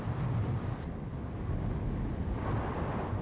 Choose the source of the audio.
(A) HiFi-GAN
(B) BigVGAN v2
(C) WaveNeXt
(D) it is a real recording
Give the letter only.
D